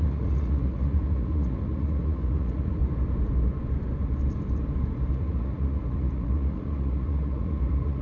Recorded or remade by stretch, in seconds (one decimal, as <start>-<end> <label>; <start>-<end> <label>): 0.0-2.8 remade; 2.8-5.1 recorded; 5.1-8.0 remade